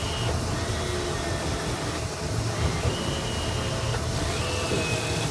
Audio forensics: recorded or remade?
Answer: recorded